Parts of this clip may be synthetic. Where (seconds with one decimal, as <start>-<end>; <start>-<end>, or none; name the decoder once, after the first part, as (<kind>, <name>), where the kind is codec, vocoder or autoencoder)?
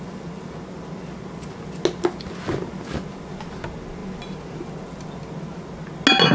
none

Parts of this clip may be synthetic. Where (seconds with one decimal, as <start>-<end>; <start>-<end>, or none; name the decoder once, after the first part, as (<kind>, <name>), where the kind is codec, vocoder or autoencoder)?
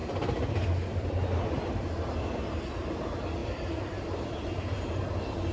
0.0-2.3 (vocoder, BigVGAN v2); 3.4-4.4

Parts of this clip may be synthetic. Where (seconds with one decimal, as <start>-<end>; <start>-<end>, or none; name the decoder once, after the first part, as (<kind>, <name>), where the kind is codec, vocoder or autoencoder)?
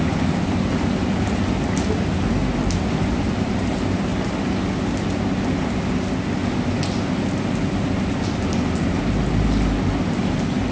none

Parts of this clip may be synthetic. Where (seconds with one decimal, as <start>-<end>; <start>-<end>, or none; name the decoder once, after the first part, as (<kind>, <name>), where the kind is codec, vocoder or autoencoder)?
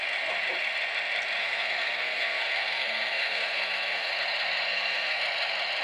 1.4-4.1 (codec, SNAC); 4.7-5.2